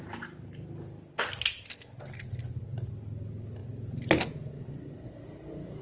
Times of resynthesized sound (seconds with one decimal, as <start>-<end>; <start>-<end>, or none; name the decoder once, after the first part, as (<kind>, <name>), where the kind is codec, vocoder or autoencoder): none